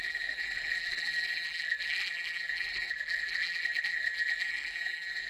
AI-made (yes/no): yes